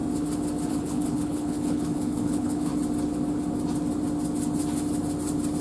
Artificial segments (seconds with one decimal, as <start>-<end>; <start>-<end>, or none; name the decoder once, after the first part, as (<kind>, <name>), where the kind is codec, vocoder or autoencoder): 0.7-2.7 (codec, HILCodec)